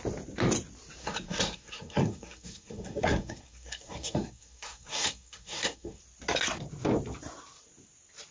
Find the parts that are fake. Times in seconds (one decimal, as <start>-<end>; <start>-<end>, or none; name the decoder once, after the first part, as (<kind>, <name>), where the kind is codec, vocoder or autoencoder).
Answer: 1.0-6.0 (codec, SNAC)